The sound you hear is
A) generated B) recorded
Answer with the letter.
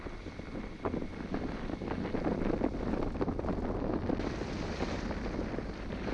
B